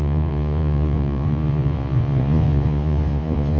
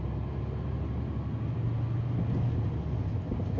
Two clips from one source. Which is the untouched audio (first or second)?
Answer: second